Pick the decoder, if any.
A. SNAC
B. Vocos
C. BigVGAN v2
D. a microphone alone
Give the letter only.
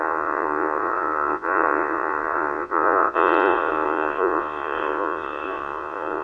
B